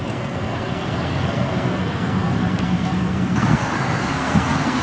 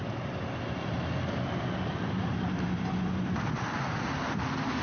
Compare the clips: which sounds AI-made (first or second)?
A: first